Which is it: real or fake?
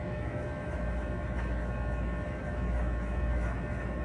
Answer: fake